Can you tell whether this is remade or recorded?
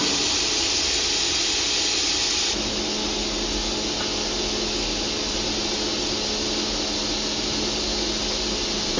recorded